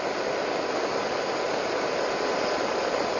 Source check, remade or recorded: recorded